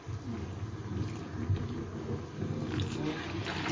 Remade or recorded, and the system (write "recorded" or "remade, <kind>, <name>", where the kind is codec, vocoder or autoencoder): recorded